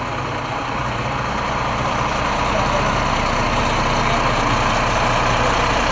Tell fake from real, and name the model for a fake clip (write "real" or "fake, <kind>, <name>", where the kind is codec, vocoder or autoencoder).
real